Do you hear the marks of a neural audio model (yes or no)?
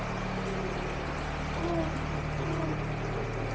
no